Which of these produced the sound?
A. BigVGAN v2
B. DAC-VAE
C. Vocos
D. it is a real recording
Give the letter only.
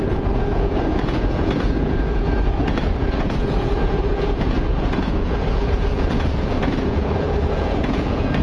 C